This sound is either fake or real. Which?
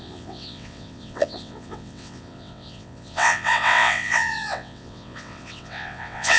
fake